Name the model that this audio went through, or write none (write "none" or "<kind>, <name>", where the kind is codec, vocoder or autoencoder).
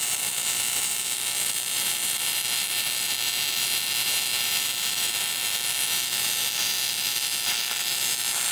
vocoder, BigVGAN v2